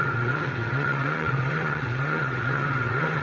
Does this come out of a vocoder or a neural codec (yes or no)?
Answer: yes